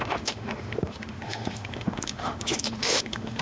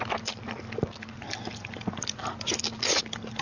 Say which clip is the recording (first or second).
second